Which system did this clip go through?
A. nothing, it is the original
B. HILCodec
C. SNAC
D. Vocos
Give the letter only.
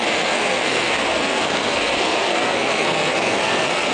C